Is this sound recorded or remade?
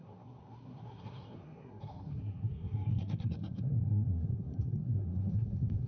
remade